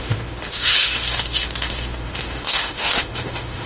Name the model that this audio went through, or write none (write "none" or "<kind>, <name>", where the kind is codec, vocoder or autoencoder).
autoencoder, DAC-VAE